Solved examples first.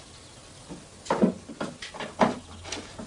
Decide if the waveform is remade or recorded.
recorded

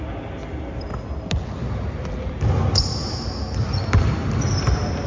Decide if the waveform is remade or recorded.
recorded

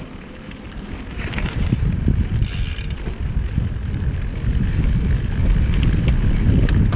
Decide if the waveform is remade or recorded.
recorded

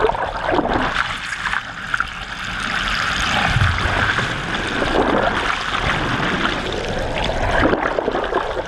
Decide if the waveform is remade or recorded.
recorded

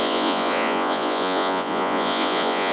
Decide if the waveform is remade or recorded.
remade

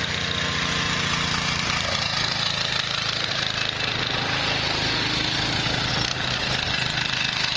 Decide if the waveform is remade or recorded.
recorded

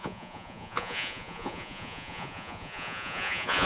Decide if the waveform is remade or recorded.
remade